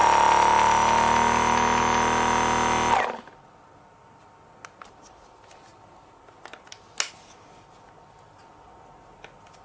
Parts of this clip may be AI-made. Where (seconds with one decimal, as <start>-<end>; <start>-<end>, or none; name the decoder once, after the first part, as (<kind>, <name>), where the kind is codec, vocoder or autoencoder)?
none

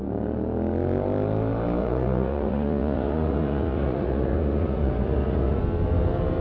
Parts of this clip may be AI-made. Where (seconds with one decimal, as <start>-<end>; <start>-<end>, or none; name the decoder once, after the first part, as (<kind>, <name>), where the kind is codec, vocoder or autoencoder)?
1.8-5.6 (vocoder, Vocos)